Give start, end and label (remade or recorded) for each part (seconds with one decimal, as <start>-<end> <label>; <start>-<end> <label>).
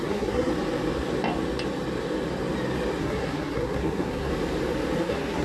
0.0-0.5 remade; 0.5-3.0 recorded; 3.0-4.3 remade; 4.3-5.0 recorded; 5.0-5.4 remade